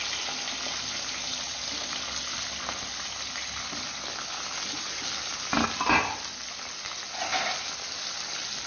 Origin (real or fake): real